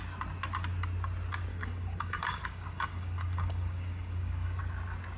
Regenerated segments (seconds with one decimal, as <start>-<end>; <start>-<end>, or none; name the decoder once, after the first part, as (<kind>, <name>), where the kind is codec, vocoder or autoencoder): 1.5-4.6 (codec, DAC)